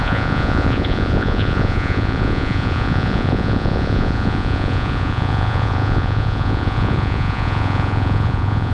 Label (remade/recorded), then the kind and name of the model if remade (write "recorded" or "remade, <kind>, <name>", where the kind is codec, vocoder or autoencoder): remade, vocoder, Vocos